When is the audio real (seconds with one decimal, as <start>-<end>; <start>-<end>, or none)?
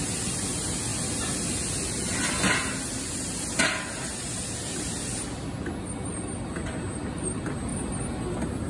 0.0-8.7